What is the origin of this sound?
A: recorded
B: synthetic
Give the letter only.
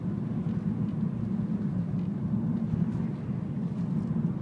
A